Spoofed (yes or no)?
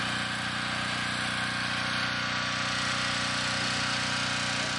no